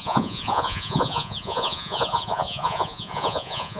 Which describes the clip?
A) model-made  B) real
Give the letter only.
A